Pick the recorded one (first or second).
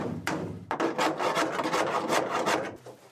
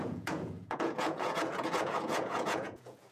first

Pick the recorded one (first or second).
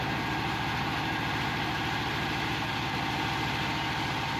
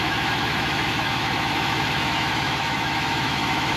first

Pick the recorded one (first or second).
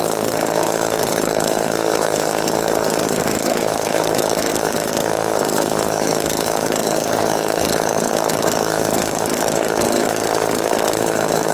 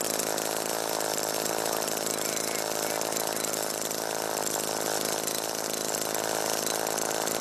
second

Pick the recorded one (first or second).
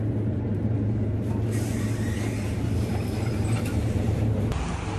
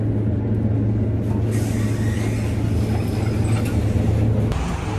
second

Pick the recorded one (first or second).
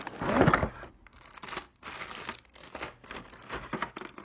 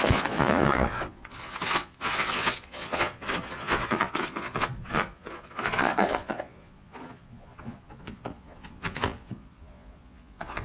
first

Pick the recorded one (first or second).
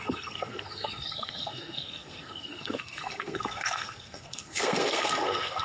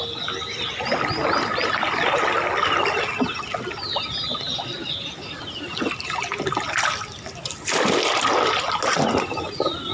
second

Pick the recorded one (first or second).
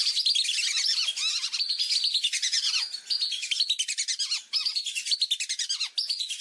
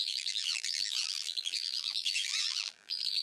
first